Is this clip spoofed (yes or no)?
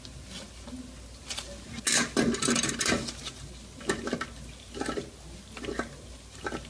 no